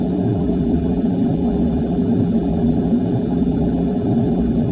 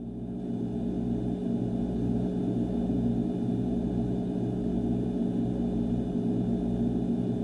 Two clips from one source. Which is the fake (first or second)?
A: first